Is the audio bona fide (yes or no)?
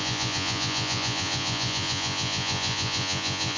no